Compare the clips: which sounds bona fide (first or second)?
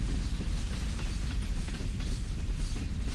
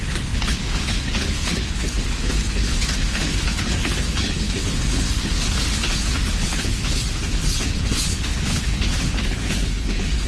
first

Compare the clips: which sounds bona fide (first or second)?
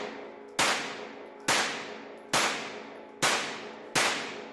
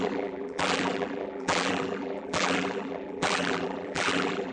first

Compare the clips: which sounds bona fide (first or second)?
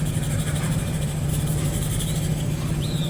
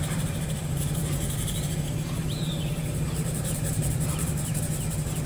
first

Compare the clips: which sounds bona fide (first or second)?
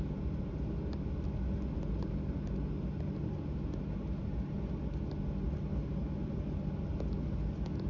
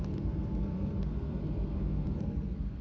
first